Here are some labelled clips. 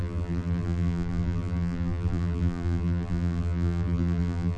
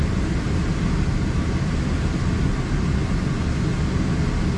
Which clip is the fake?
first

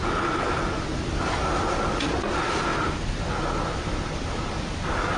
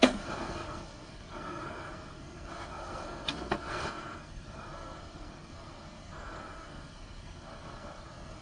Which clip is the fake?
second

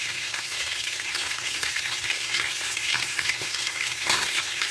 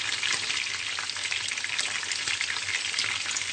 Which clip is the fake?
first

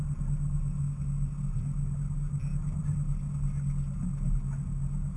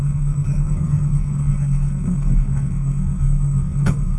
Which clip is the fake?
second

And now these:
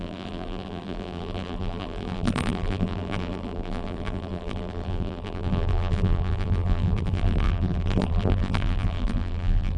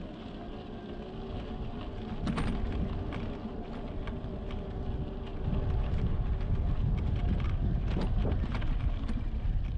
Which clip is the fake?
first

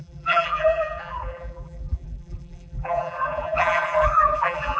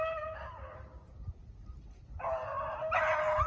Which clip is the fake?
first